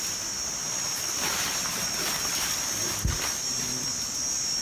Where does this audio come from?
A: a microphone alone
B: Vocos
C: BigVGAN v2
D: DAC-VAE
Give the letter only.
A